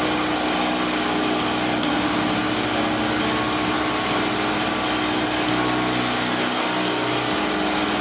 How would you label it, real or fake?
real